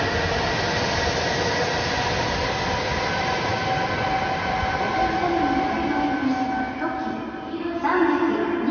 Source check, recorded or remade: recorded